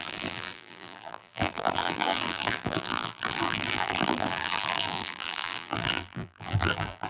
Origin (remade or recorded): remade